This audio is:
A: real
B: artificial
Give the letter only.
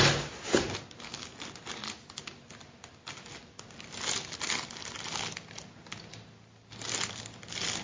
A